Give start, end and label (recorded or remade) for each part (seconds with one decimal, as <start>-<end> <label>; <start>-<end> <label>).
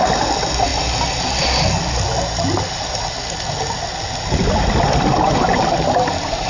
0.0-6.5 recorded